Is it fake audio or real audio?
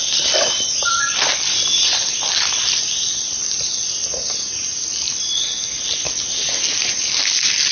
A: real